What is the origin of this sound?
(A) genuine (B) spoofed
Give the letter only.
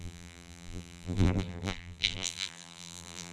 B